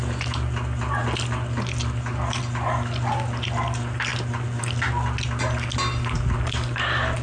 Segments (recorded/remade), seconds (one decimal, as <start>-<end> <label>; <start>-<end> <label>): 0.0-7.2 recorded